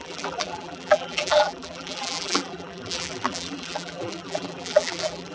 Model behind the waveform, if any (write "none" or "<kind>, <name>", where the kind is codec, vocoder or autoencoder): vocoder, BigVGAN v2